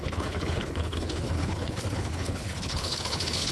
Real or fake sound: fake